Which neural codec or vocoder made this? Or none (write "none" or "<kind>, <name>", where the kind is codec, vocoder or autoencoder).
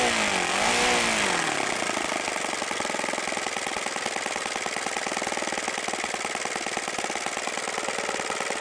none